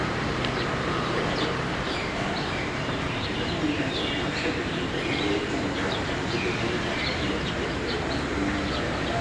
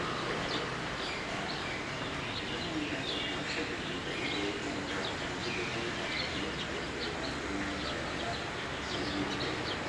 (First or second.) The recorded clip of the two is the second